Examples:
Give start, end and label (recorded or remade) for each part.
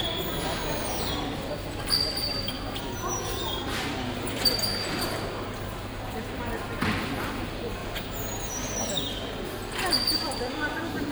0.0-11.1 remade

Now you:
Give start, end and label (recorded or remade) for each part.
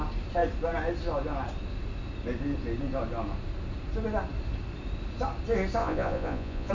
0.0-5.8 recorded; 5.8-6.7 remade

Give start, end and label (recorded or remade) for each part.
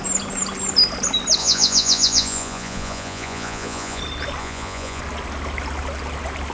0.0-1.4 recorded; 1.4-4.0 remade; 4.0-4.4 recorded; 4.4-5.0 remade; 5.0-6.5 recorded